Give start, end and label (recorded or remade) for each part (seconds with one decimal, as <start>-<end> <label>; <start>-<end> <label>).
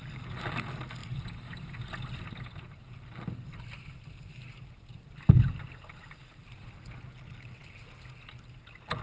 0.0-9.0 recorded